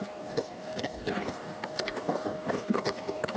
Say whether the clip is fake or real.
fake